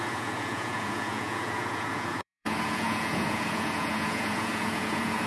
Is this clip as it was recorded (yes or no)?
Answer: no